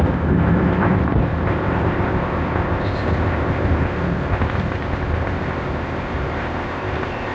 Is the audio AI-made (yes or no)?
yes